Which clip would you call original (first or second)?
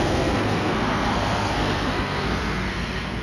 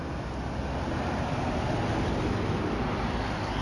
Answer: second